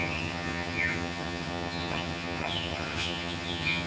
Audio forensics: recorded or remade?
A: remade